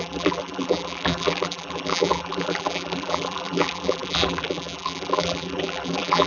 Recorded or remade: remade